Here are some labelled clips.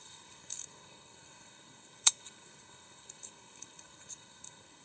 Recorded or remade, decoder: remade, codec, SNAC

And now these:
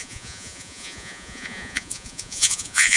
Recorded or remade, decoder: remade, vocoder, Vocos